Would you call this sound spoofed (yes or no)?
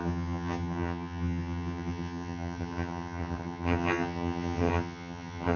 yes